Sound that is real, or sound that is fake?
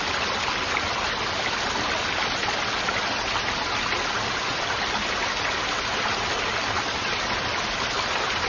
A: real